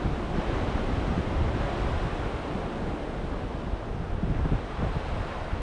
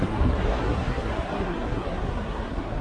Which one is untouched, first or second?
first